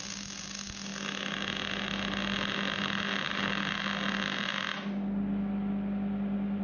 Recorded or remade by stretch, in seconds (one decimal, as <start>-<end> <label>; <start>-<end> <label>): 0.0-6.6 recorded

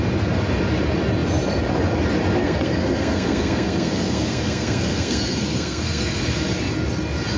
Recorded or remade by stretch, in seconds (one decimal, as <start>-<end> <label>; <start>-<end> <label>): 0.0-2.4 recorded; 2.4-6.2 remade; 6.2-7.4 recorded

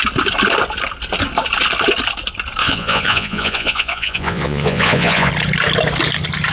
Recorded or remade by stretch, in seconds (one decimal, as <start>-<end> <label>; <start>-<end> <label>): 0.0-2.6 recorded; 2.6-5.3 remade; 5.3-6.5 recorded